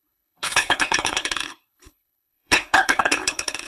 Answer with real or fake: fake